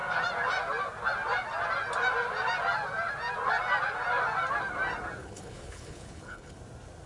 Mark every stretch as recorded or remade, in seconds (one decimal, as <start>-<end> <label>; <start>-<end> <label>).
0.0-5.2 recorded; 5.2-6.6 remade; 6.6-7.1 recorded